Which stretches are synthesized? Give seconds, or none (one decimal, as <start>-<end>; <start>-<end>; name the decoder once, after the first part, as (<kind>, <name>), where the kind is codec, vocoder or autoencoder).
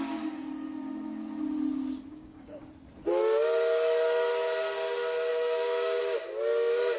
2.1-2.6 (codec, DAC); 5.3-6.0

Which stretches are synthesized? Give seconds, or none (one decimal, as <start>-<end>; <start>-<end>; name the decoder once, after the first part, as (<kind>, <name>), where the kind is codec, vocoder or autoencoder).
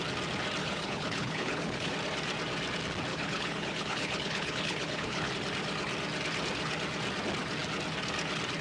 0.6-1.9 (codec, HILCodec); 3.1-5.3